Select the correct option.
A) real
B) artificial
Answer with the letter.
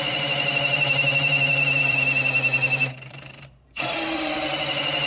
B